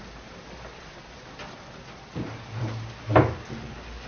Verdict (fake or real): real